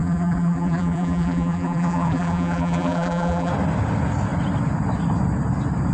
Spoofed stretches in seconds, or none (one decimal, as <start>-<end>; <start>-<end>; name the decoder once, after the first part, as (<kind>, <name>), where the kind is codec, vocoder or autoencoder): 0.0-3.5 (vocoder, BigVGAN v2)